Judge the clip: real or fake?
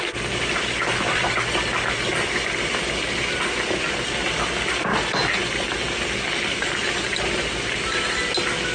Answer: real